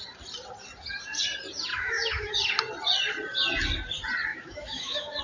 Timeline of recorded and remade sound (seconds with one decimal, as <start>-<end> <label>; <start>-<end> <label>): 0.0-1.7 recorded; 1.7-2.3 remade; 2.3-4.3 recorded; 4.3-5.2 remade